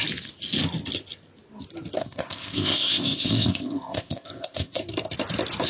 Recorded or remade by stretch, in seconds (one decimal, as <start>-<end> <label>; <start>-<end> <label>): 0.0-2.0 recorded; 2.0-4.8 remade; 4.8-5.7 recorded